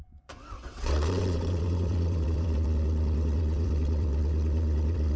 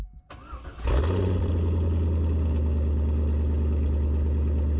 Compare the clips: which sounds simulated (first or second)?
first